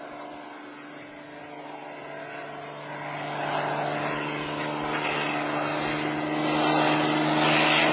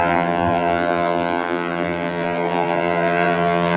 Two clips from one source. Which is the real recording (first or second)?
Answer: first